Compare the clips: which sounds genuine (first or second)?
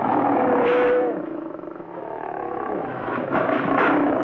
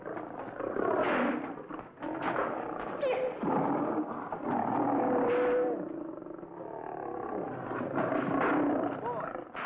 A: second